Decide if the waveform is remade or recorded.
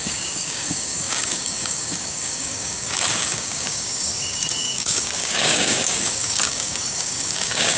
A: remade